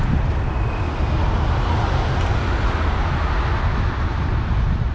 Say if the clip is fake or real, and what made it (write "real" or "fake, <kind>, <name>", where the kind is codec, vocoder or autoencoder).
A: real